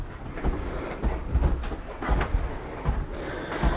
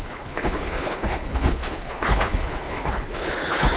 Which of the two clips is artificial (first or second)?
second